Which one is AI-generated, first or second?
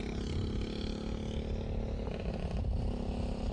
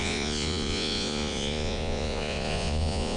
second